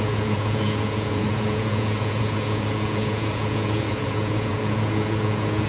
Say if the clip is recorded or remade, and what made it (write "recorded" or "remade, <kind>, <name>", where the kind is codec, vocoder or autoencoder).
remade, vocoder, Vocos